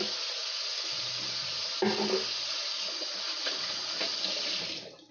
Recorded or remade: recorded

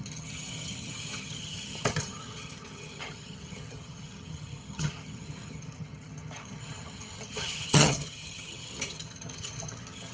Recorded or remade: remade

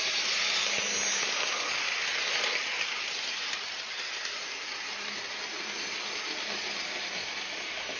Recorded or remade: recorded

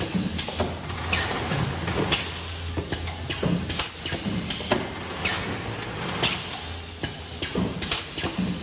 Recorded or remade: recorded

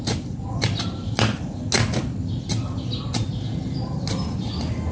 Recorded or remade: recorded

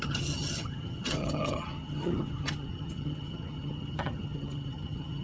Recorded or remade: remade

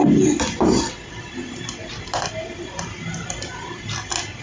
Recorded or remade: recorded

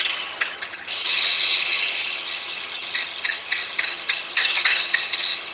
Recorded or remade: remade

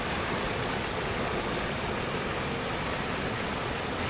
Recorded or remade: recorded